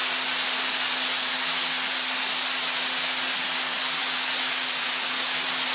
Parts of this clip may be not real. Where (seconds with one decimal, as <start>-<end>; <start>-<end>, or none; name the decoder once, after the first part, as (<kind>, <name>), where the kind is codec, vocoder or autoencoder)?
none